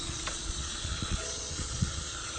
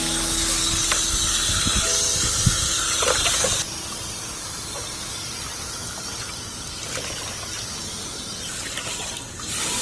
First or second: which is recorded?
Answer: second